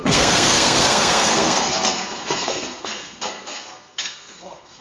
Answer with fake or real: fake